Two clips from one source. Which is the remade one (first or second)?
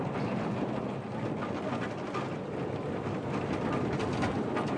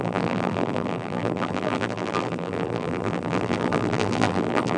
second